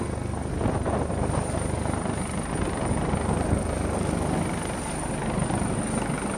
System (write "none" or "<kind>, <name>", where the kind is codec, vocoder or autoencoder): none